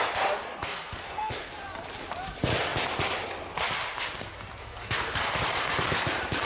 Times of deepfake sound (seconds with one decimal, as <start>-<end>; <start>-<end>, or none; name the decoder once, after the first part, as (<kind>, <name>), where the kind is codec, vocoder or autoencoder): 0.4-1.5 (codec, SNAC); 4.6-5.2